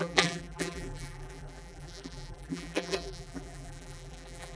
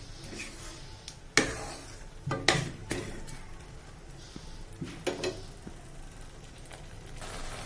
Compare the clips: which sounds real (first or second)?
second